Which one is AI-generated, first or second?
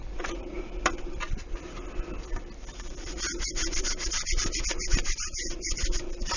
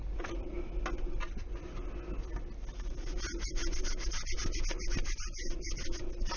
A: first